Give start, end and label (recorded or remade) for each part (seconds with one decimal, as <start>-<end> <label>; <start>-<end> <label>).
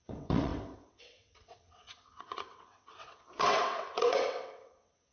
0.0-5.1 remade